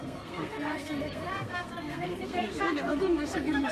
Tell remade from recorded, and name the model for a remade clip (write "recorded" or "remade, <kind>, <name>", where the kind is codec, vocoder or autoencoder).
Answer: remade, codec, SNAC